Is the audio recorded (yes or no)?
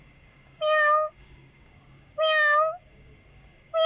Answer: no